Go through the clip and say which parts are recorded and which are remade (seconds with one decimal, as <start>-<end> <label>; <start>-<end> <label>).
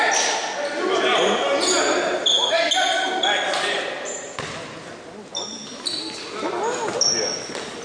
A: 0.0-7.8 recorded